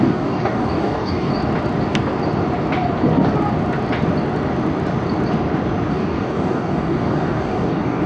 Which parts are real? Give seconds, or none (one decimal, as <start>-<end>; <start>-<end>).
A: 1.3-5.9

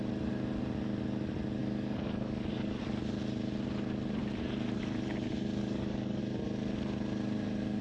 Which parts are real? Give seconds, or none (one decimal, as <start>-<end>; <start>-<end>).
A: 0.0-1.6; 2.8-5.6; 6.2-7.8